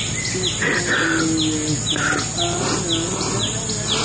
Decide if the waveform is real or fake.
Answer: real